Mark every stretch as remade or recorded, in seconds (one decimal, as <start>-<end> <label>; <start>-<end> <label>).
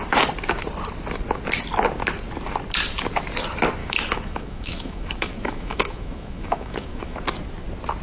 0.0-3.8 recorded; 3.8-7.2 remade; 7.2-8.0 recorded